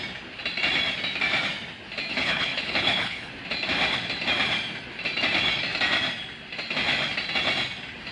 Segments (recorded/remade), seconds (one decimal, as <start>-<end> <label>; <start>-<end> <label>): 0.0-2.1 recorded; 2.1-3.3 remade; 3.3-8.1 recorded